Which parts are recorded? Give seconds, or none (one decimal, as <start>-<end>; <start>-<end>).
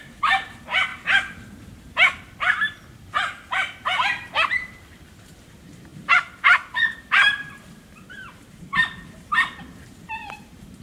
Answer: 0.9-4.8; 9.3-10.4